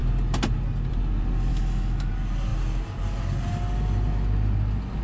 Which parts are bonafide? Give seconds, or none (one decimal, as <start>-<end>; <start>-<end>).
0.0-1.5; 2.1-5.0